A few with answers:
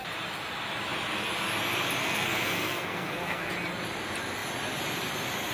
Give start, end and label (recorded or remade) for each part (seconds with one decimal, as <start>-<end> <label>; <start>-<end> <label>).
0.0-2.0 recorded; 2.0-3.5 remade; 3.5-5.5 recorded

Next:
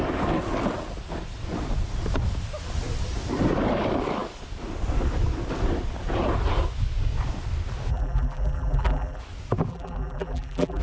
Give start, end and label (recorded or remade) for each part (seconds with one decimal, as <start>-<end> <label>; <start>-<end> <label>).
0.0-7.9 recorded; 7.9-9.2 remade; 9.2-9.7 recorded; 9.7-10.8 remade

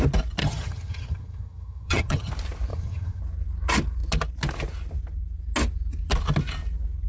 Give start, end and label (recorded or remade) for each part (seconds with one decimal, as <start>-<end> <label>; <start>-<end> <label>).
0.0-0.4 recorded; 0.4-2.3 remade; 2.3-2.7 recorded; 2.7-3.2 remade; 3.2-7.1 recorded